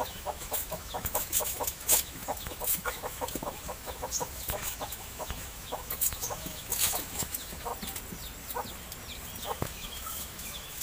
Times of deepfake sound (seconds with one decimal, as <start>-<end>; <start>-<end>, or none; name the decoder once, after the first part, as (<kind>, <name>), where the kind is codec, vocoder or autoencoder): 0.0-7.7 (autoencoder, DAC-VAE); 9.4-10.8